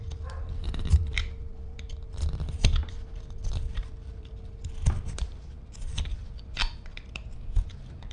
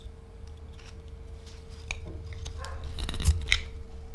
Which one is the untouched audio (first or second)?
second